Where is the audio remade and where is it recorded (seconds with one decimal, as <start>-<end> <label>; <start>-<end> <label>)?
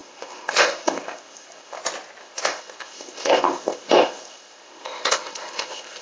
0.0-1.8 remade; 1.8-2.2 recorded; 2.2-6.0 remade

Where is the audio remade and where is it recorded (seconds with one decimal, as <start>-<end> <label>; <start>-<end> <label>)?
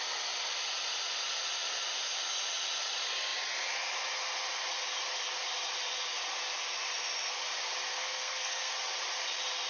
0.0-7.9 recorded; 7.9-8.7 remade; 8.7-9.7 recorded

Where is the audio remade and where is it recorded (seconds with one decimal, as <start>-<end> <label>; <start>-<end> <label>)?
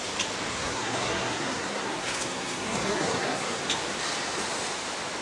0.0-0.5 recorded; 0.5-3.6 remade; 3.6-5.2 recorded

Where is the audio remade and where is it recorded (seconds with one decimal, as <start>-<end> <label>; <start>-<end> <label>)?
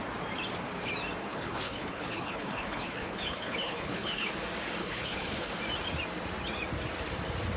0.0-1.2 recorded; 1.2-4.3 remade; 4.3-4.8 recorded; 4.8-5.5 remade; 5.5-7.6 recorded